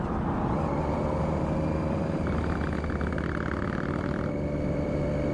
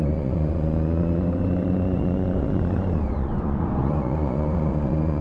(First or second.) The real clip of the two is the first